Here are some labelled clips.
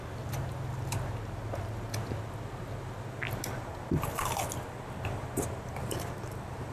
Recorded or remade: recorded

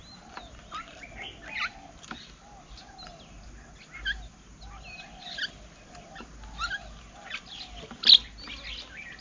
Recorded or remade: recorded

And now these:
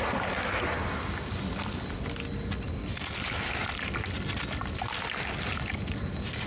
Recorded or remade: recorded